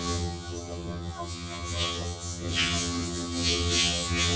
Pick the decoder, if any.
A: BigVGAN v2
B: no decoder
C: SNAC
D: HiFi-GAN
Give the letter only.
D